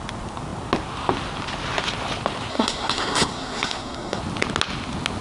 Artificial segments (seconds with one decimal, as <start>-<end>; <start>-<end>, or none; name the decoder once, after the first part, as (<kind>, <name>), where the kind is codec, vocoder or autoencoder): 2.5-4.2 (codec, SNAC)